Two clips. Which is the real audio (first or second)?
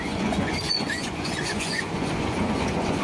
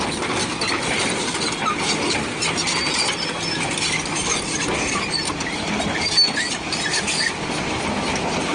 second